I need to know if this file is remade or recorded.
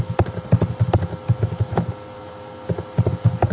recorded